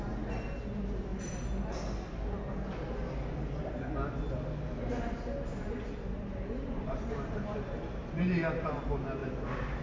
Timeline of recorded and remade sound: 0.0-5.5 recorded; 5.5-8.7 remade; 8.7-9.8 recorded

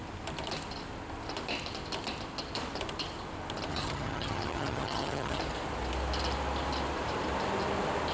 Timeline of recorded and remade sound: 0.0-3.7 recorded; 3.7-5.4 remade; 5.4-8.1 recorded

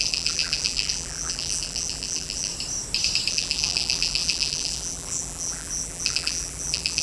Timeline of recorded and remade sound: 0.0-2.5 remade; 2.5-3.3 recorded; 3.3-7.0 remade

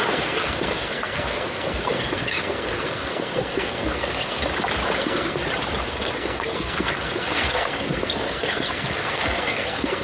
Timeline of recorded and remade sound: 0.0-4.4 remade; 4.4-5.0 recorded; 5.0-5.4 remade; 5.4-5.9 recorded; 5.9-10.0 remade

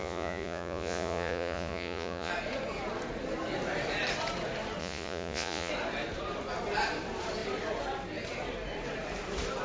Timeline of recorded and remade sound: 0.0-2.3 remade; 2.3-4.8 recorded; 4.8-5.7 remade; 5.7-9.6 recorded

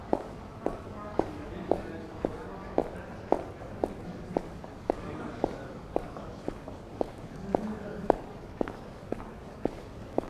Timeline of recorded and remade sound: 0.0-2.8 remade; 2.8-3.6 recorded; 3.6-10.3 remade

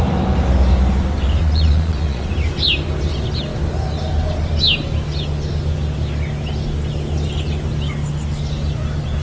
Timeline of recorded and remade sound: 0.0-1.4 recorded; 1.4-2.3 remade; 2.3-9.2 recorded